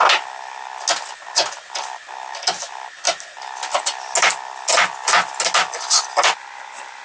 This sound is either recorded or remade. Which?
recorded